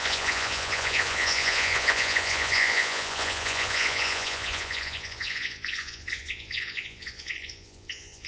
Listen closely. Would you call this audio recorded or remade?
remade